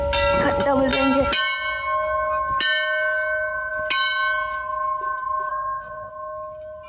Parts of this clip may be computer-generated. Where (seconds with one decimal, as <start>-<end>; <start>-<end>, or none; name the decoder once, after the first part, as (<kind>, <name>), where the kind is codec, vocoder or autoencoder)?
5.5-6.1 (codec, SNAC)